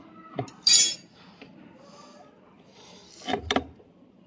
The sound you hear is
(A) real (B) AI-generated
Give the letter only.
A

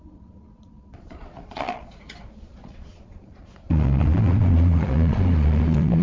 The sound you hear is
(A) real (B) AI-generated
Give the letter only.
B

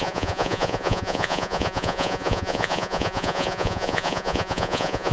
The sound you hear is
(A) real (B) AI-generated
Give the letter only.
B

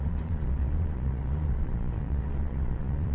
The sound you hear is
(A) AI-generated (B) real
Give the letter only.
A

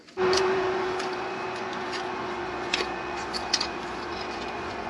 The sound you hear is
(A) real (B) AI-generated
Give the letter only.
B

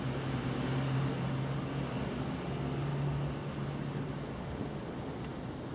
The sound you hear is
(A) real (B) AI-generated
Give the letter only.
A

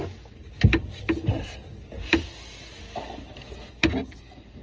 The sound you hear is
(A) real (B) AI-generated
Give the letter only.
A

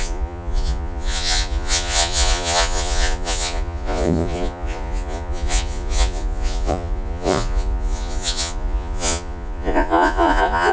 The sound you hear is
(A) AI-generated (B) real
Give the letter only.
A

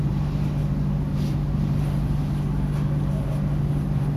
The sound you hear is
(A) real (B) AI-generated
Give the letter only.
A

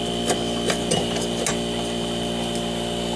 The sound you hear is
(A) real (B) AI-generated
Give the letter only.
A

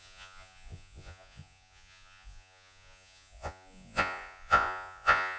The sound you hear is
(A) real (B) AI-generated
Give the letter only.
B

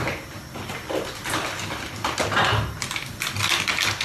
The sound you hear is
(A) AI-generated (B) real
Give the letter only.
B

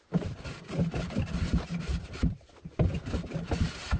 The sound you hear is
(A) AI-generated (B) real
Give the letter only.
B